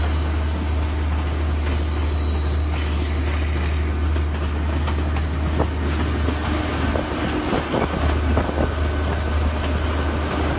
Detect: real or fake real